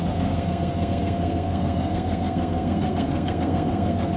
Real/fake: fake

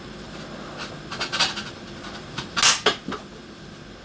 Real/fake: real